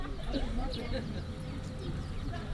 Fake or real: real